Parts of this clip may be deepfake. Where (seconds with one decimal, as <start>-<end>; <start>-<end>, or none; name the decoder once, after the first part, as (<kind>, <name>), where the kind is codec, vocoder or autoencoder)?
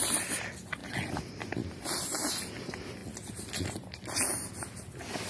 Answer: none